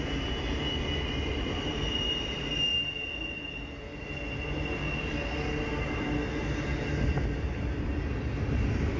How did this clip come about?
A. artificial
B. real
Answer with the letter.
B